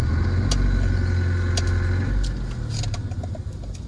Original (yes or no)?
yes